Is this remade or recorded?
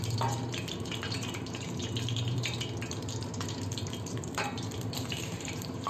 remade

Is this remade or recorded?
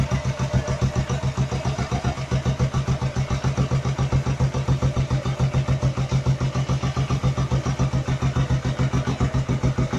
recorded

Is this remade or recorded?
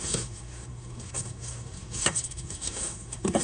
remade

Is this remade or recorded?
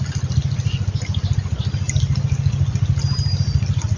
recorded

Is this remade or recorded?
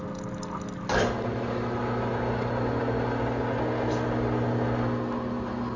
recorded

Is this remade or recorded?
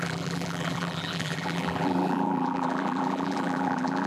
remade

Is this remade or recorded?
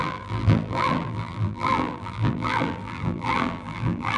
remade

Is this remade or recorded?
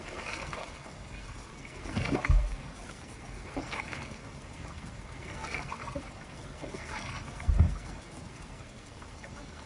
remade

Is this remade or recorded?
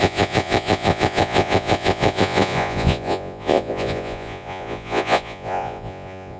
remade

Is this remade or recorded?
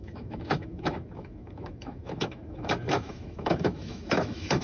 remade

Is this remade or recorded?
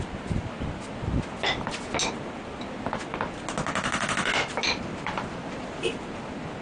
recorded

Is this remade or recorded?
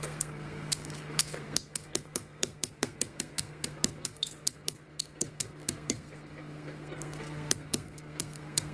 remade